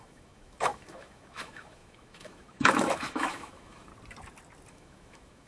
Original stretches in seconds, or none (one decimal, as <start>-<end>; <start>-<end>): 3.9-4.7